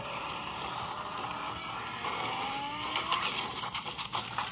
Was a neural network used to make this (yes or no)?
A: yes